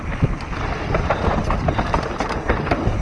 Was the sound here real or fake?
real